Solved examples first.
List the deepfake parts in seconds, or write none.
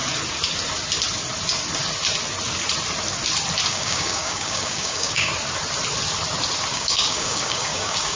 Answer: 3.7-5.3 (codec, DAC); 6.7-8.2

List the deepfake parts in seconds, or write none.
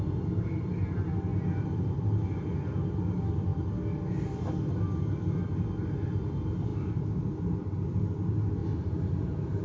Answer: 6.7-8.0 (vocoder, BigVGAN v2); 8.6-9.6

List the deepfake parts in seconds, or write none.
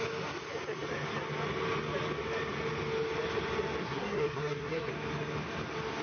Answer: 3.8-4.9 (codec, SNAC)